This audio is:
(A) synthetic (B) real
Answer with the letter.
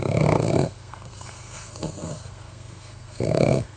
A